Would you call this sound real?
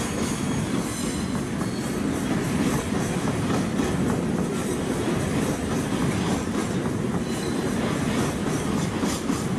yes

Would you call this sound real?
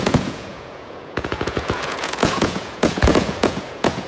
no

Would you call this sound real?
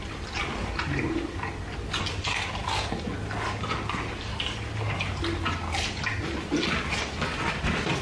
yes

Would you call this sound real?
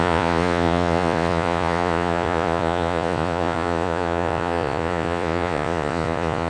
no